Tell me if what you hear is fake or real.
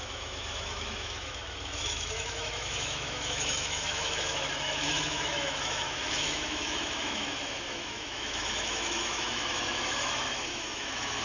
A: fake